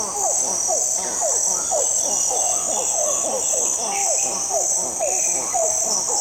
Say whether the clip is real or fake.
real